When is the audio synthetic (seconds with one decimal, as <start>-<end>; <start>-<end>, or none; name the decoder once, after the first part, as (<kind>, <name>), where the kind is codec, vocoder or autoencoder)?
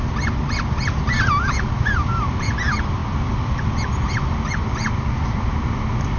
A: none